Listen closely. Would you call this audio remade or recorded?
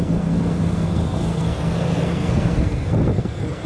remade